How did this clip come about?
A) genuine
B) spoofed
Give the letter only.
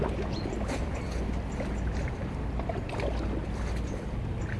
A